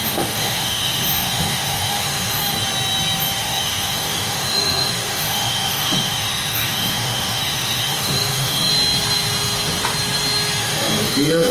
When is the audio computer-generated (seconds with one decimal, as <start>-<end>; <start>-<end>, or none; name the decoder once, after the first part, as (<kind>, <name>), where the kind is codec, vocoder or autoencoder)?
0.0-2.4 (autoencoder, DAC-VAE); 3.4-8.7; 10.6-11.5